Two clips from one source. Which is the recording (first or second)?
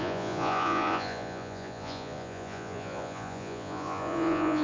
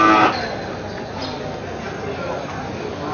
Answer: second